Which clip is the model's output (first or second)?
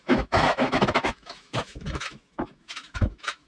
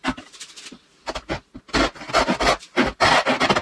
first